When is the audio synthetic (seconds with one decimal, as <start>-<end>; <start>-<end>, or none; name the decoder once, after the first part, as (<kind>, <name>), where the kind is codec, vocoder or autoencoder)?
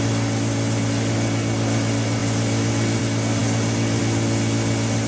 none